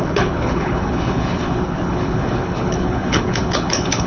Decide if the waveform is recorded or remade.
remade